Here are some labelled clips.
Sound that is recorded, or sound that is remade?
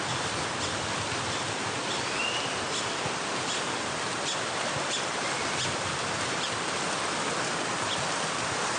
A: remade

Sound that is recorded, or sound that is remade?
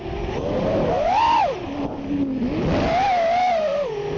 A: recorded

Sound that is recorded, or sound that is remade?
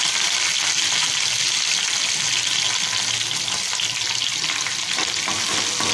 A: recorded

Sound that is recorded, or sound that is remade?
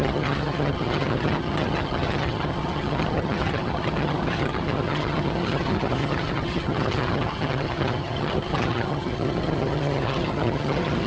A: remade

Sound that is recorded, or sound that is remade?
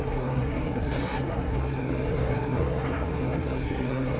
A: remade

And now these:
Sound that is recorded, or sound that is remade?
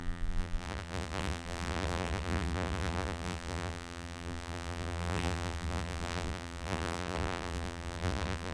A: remade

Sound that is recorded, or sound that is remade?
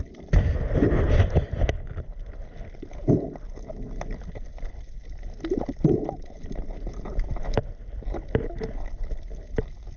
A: recorded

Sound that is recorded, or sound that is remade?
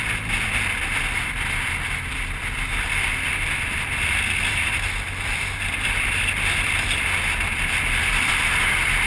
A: remade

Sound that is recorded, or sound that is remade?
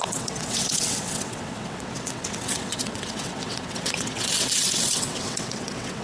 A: remade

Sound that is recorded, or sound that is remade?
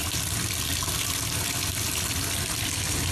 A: recorded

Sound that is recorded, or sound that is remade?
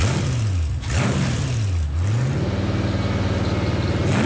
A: recorded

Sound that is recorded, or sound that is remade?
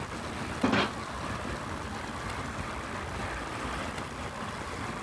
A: recorded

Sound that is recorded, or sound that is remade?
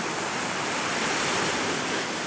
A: recorded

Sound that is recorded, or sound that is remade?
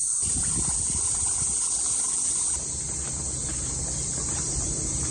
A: recorded